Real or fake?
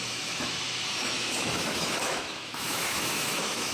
fake